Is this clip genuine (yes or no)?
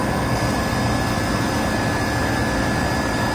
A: yes